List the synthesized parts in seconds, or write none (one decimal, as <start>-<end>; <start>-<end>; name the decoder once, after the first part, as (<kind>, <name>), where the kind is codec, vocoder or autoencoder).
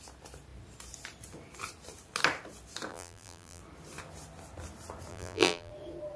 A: 2.9-3.6 (vocoder, BigVGAN v2); 5.1-5.7